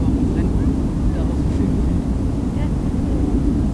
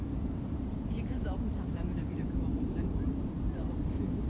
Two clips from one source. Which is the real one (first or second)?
first